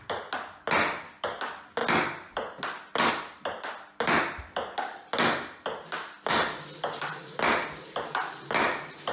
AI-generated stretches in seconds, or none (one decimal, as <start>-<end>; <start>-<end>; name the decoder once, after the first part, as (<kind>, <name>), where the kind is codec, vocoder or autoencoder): none

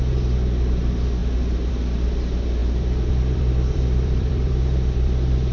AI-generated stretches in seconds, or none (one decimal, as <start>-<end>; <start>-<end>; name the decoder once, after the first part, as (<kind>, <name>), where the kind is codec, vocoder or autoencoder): 1.2-1.7 (vocoder, BigVGAN v2); 2.6-5.5

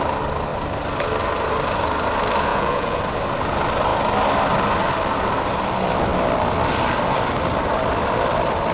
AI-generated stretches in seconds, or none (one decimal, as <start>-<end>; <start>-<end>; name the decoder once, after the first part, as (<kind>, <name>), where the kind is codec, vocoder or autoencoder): 2.5-3.0 (vocoder, Vocos)

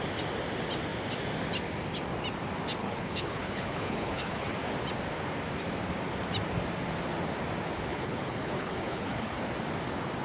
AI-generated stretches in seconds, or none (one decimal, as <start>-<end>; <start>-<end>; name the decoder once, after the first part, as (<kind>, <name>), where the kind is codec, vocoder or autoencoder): 2.8-4.5 (codec, HILCodec); 7.9-9.4

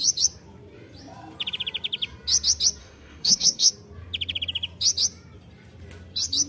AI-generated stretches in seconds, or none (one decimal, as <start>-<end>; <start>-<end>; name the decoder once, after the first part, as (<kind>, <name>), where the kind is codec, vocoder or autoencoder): 2.8-3.7 (codec, SNAC)

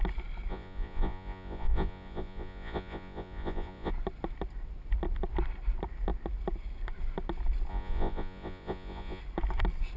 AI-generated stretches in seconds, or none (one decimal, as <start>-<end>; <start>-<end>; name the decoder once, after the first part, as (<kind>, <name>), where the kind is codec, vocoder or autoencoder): 0.5-3.9 (vocoder, Vocos); 7.7-9.2

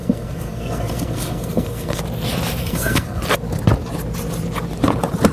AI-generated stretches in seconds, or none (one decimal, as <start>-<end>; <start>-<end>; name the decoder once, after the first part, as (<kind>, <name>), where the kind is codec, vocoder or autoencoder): 0.0-2.0 (codec, SNAC); 2.6-3.2